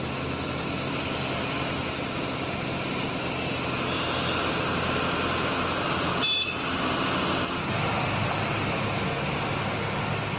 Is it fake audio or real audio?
real